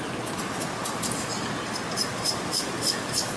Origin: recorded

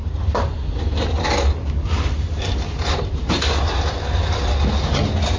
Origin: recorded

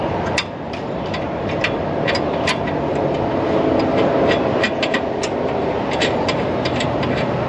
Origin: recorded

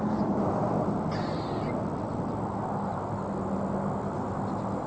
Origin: recorded